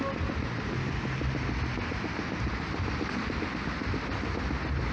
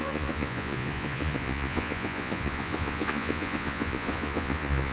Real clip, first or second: first